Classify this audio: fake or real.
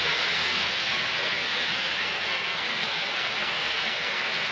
fake